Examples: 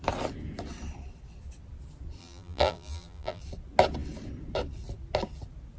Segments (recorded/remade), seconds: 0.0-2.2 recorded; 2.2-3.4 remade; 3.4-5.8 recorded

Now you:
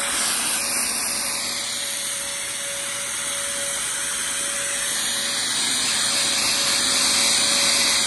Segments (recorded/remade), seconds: 0.0-1.0 recorded; 1.0-2.2 remade; 2.2-8.1 recorded